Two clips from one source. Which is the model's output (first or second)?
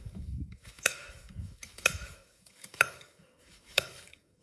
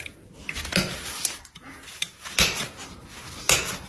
first